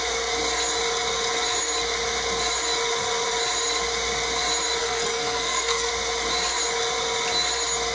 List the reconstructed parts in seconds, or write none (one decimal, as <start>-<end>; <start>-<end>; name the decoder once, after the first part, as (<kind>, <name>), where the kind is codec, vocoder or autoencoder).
4.8-5.9 (codec, SNAC)